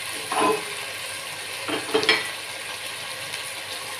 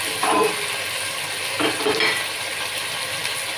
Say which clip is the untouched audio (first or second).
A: first